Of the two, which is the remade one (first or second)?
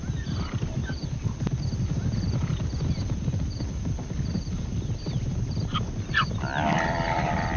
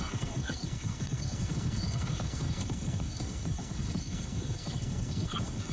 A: second